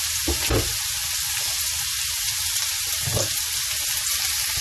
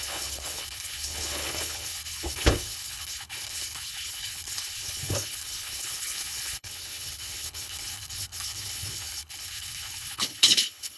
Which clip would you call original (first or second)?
first